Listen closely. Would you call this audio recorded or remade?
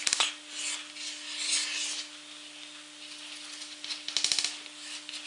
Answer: recorded